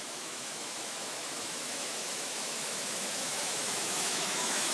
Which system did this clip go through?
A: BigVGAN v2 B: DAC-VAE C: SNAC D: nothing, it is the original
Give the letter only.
B